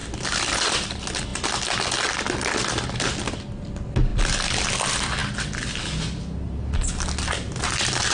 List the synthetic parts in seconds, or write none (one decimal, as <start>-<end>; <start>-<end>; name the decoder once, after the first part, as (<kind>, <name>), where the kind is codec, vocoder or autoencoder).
none